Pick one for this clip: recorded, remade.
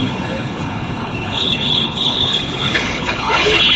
remade